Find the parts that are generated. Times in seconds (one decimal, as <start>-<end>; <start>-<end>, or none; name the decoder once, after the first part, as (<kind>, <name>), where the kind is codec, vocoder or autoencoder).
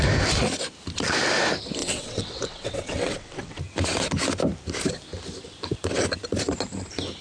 1.8-3.6 (vocoder, WaveNeXt)